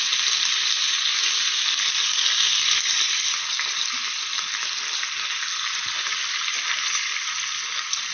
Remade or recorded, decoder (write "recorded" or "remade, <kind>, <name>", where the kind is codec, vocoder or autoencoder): recorded